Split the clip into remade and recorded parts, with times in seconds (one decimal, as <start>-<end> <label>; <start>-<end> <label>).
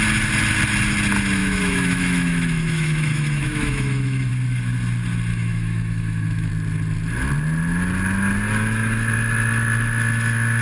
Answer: 0.0-1.4 recorded; 1.4-4.3 remade; 4.3-5.3 recorded; 5.3-6.5 remade; 6.5-10.6 recorded